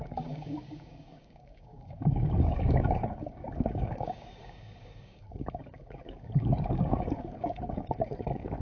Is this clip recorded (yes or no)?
no